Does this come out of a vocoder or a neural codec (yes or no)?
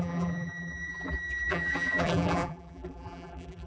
yes